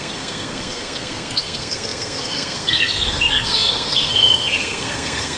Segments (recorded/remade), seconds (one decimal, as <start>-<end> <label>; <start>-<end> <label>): 0.0-5.4 remade